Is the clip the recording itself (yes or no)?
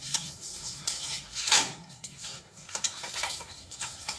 no